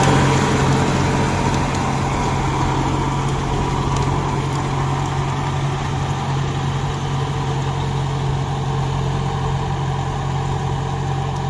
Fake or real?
real